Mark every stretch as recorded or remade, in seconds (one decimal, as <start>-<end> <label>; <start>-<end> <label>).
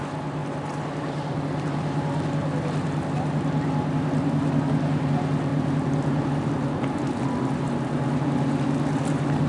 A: 0.0-9.5 recorded